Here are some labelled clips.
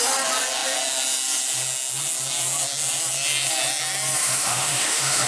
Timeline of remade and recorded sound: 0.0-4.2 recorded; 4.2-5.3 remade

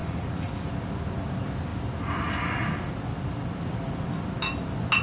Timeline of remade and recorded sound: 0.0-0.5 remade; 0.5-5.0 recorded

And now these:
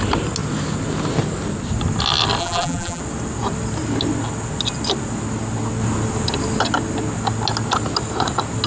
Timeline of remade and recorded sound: 0.0-2.4 recorded; 2.4-3.0 remade; 3.0-8.7 recorded

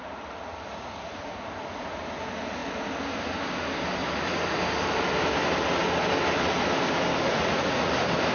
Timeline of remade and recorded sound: 0.0-0.7 recorded; 0.7-2.0 remade; 2.0-4.0 recorded; 4.0-4.6 remade; 4.6-7.3 recorded; 7.3-7.9 remade; 7.9-8.3 recorded

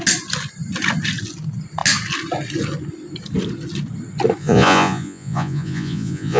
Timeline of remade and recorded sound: 0.0-4.4 recorded; 4.4-6.4 remade

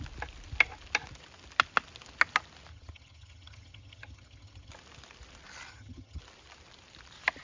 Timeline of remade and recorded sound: 0.0-2.7 recorded; 2.7-4.7 remade; 4.7-5.7 recorded; 5.7-6.2 remade; 6.2-7.4 recorded